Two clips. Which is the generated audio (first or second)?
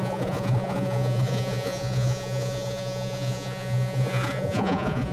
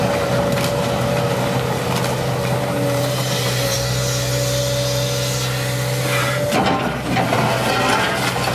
first